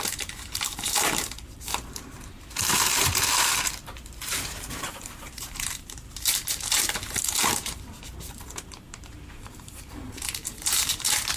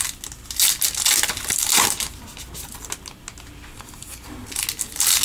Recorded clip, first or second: second